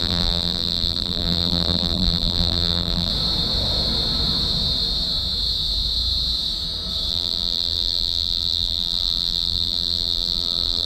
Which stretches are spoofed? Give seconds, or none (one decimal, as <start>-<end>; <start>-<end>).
0.0-3.1; 7.1-10.8